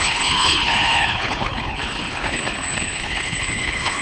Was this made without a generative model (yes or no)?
no